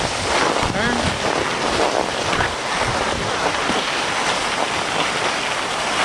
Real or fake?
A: real